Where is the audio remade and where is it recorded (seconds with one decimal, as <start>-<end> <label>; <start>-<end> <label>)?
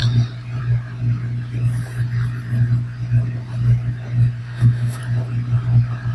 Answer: 0.0-4.4 recorded; 4.4-5.0 remade; 5.0-6.1 recorded